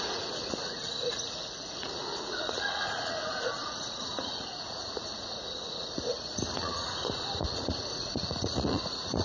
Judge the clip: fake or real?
fake